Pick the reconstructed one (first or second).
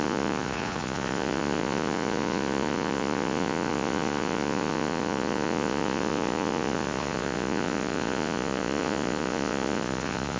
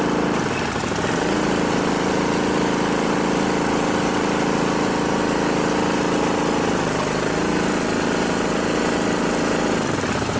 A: first